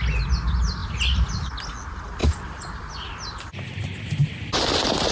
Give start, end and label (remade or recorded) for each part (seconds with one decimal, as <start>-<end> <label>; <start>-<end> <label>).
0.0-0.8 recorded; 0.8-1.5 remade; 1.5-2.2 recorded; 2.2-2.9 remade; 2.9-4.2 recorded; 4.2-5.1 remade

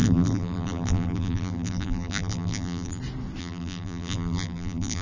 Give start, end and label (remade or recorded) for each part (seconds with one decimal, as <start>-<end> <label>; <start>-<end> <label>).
0.0-3.0 remade; 3.0-3.4 recorded; 3.4-5.0 remade

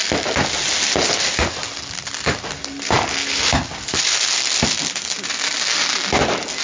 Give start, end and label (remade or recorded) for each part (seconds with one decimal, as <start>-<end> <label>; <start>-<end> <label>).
0.0-6.6 recorded